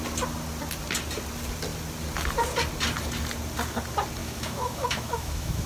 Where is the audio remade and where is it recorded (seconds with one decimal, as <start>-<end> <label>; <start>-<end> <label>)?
0.0-4.2 recorded; 4.2-5.7 remade